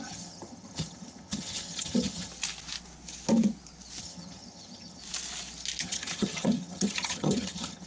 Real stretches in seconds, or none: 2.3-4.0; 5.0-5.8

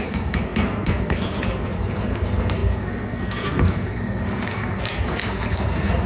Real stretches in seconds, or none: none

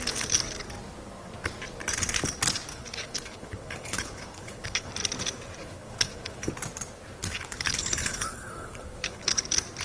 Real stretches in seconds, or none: 0.0-2.7; 4.9-5.6; 6.5-7.2; 9.4-9.8

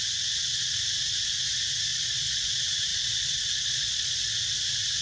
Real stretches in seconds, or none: 0.0-1.9; 2.5-2.9; 4.3-5.0

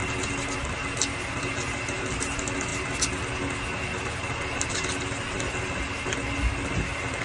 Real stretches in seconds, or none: 0.0-7.2

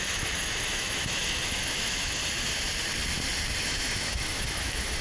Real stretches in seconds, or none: 2.2-3.6

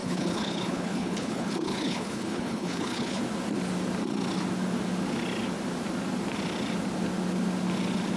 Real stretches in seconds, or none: 3.2-8.2

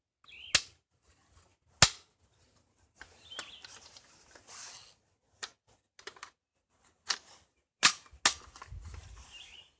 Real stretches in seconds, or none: 0.0-9.8